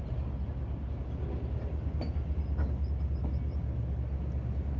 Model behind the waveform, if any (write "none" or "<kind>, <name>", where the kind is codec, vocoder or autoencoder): none